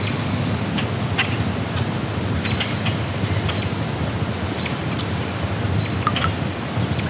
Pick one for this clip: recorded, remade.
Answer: recorded